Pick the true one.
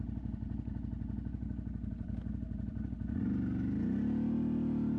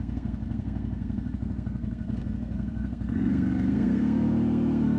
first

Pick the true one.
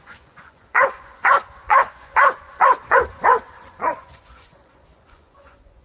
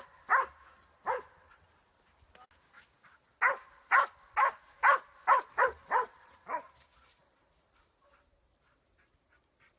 second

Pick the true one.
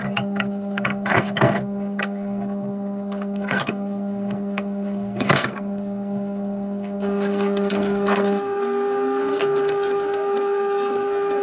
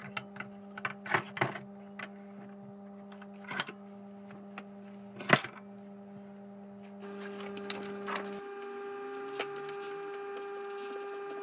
second